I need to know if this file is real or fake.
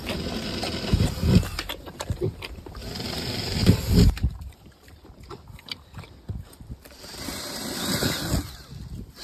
fake